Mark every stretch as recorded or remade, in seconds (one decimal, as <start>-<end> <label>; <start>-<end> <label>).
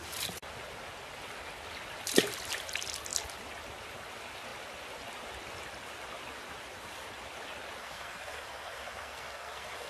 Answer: 0.0-7.8 recorded; 7.8-9.9 remade